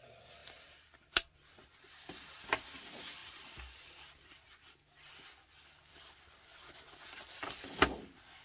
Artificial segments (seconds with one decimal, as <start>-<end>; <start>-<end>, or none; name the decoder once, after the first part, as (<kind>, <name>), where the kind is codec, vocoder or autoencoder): 0.4-1.7 (vocoder, BigVGAN v2); 3.2-7.7